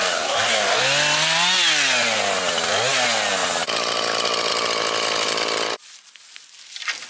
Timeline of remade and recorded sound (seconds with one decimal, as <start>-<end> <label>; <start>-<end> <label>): 0.0-0.8 remade; 0.8-7.1 recorded